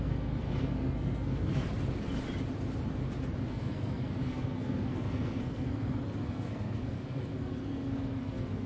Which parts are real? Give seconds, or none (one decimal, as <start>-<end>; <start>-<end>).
1.6-3.5